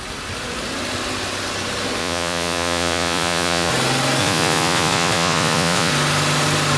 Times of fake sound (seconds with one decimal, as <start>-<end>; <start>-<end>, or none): 2.0-3.7; 4.2-5.9